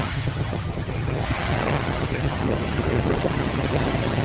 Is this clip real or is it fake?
fake